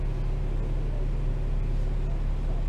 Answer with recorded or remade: recorded